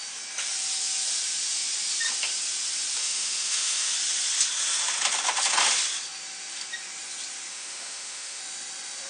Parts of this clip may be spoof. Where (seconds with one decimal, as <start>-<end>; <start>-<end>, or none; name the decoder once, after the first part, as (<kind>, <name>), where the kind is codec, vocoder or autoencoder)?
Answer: 3.0-3.9 (autoencoder, DAC-VAE); 7.5-8.4